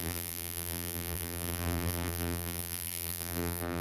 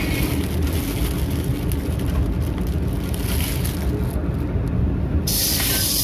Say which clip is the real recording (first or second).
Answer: second